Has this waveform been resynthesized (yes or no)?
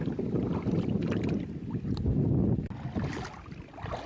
no